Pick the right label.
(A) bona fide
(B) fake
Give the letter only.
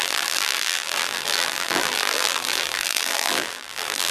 B